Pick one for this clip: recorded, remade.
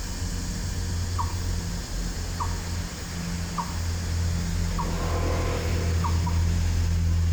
recorded